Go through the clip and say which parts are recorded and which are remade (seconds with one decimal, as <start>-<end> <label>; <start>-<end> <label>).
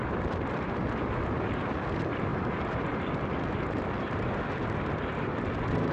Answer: 0.0-5.9 recorded